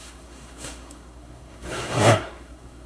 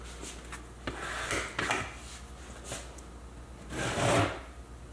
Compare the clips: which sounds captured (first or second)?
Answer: second